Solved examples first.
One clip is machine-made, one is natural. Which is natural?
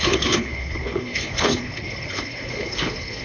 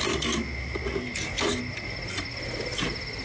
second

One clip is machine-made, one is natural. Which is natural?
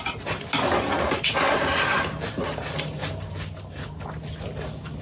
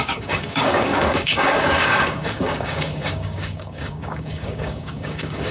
first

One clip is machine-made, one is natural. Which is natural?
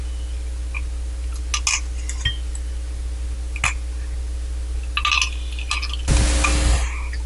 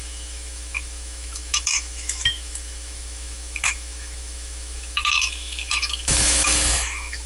first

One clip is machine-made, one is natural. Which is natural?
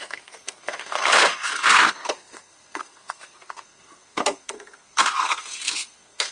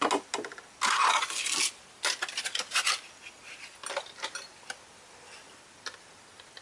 second